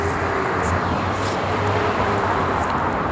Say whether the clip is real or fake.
real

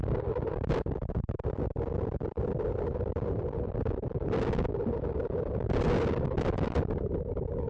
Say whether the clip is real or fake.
real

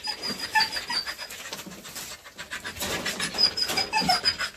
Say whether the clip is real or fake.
real